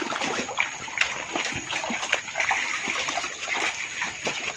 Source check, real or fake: real